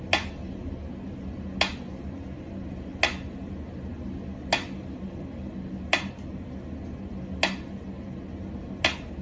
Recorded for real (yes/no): yes